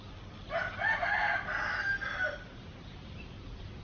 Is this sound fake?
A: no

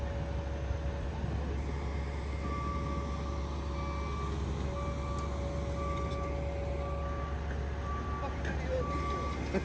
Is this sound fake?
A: no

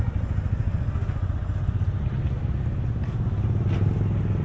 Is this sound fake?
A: no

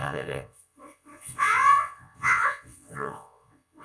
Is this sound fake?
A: yes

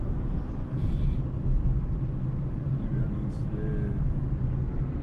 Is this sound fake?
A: no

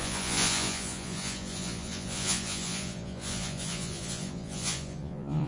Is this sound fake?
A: yes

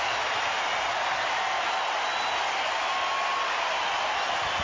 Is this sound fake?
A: no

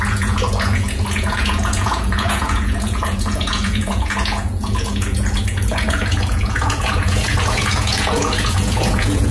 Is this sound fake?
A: yes